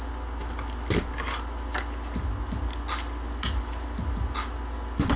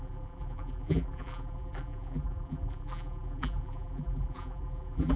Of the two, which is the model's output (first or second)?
second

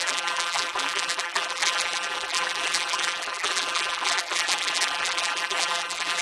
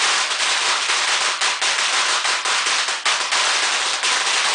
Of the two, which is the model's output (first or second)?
first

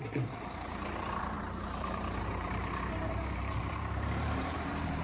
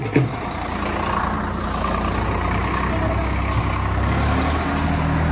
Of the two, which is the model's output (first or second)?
first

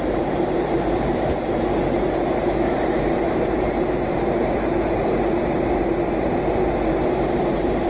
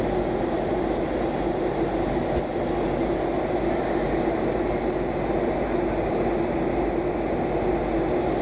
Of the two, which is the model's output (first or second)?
first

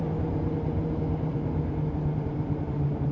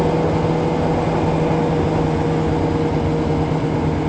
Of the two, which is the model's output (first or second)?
first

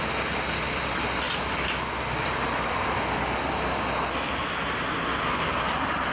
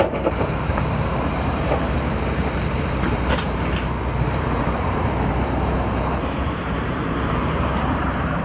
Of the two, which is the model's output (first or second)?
second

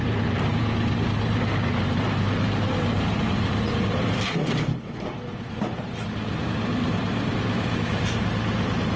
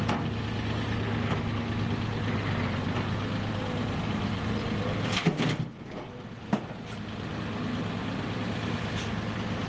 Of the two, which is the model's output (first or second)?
first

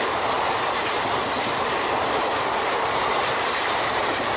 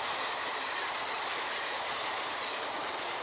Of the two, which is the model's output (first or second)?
first